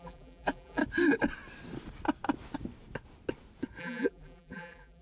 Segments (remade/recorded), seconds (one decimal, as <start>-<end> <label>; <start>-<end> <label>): 0.0-0.8 remade; 0.8-3.8 recorded; 3.8-5.0 remade